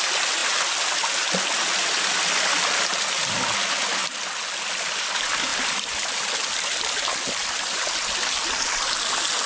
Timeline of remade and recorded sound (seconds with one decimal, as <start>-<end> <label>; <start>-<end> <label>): 0.0-5.5 recorded; 5.5-6.1 remade; 6.1-7.4 recorded; 7.4-8.1 remade; 8.1-9.5 recorded